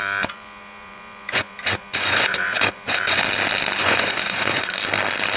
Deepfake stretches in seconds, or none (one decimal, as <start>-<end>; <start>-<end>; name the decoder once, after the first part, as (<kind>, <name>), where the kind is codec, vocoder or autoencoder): 0.0-3.2 (vocoder, Vocos); 3.8-4.7